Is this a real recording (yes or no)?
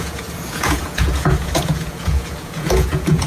no